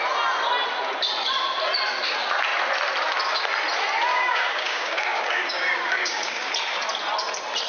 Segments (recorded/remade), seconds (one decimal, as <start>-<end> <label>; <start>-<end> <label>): 0.0-4.1 recorded; 4.1-6.5 remade; 6.5-7.7 recorded